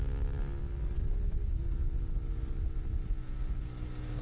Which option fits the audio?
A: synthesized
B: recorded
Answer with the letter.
B